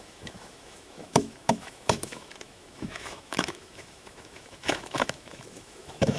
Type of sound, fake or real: fake